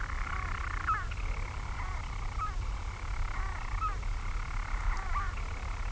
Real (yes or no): yes